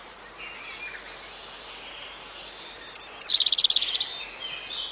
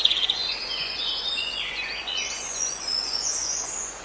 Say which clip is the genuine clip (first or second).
first